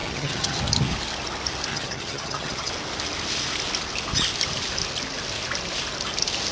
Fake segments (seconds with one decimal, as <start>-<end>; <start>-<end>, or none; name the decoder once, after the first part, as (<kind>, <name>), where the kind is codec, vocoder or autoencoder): 0.0-0.6 (vocoder, HiFi-GAN); 1.7-2.7